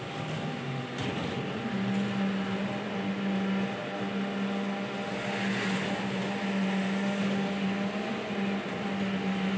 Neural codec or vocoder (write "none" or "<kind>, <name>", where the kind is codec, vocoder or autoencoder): none